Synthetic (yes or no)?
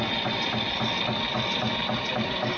no